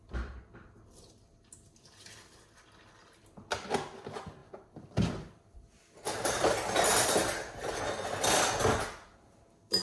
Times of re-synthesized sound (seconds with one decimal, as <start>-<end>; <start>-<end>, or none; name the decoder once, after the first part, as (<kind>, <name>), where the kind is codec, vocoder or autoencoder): 4.4-7.8 (vocoder, BigVGAN v2)

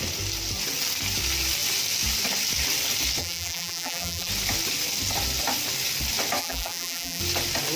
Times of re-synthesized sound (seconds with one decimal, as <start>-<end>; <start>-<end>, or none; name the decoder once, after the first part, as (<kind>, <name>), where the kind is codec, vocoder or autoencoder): 3.2-4.3 (vocoder, BigVGAN v2); 6.4-7.2

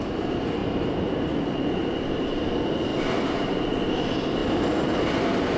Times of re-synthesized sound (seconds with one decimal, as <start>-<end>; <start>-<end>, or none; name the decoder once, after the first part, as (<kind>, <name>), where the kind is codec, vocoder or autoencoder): 0.6-2.5 (vocoder, BigVGAN v2); 2.9-3.7

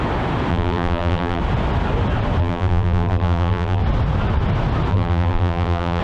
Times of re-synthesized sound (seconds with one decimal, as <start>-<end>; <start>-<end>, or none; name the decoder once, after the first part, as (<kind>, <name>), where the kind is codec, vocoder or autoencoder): 0.5-1.4 (vocoder, BigVGAN v2); 2.4-3.8; 4.9-6.0